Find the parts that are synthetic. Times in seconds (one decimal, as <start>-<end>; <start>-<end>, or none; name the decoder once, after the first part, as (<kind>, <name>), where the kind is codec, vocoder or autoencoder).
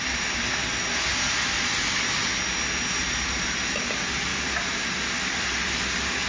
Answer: 0.0-0.6 (vocoder, BigVGAN v2); 3.0-4.3; 5.4-6.3